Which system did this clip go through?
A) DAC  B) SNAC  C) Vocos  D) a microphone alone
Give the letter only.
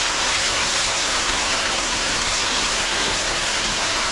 B